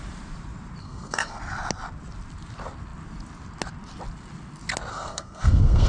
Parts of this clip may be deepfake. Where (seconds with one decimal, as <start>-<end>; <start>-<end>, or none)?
0.8-1.4; 4.9-5.9